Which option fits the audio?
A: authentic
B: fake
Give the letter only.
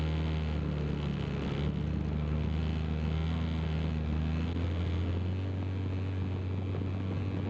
A